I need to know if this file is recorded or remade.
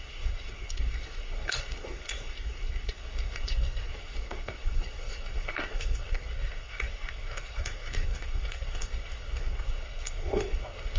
remade